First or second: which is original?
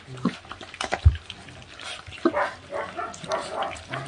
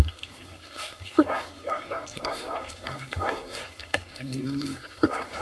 first